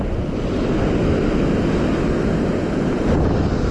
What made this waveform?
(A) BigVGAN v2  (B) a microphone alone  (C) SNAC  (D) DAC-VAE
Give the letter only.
B